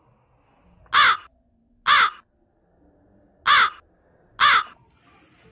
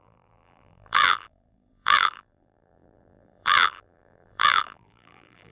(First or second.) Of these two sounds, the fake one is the second